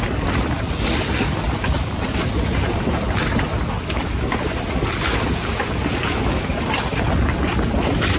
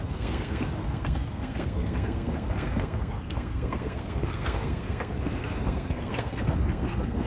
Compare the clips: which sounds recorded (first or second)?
first